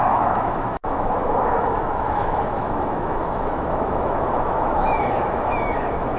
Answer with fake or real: fake